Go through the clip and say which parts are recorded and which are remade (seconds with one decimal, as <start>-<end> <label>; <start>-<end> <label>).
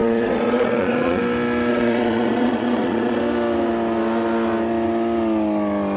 0.0-1.2 remade; 1.2-1.7 recorded; 1.7-3.2 remade; 3.2-6.0 recorded